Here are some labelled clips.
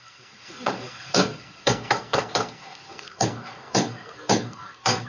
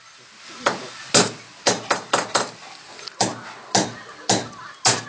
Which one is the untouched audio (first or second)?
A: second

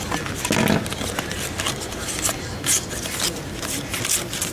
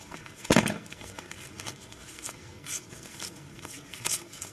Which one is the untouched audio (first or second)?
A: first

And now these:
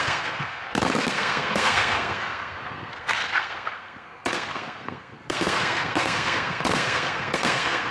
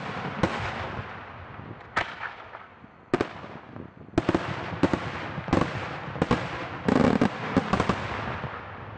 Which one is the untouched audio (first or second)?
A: second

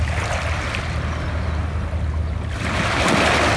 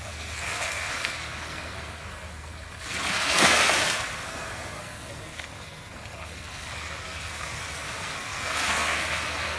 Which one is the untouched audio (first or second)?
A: first